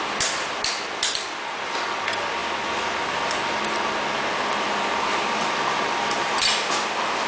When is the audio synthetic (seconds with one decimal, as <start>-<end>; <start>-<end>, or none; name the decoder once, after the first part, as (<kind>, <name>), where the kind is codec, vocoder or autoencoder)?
none